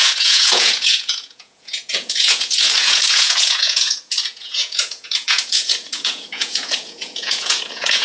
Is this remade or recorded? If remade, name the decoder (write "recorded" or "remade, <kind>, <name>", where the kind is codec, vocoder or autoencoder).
remade, vocoder, Vocos